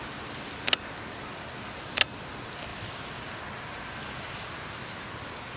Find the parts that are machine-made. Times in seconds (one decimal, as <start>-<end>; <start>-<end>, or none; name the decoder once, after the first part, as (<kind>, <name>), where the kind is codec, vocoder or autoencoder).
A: 2.7-3.4 (vocoder, BigVGAN v2)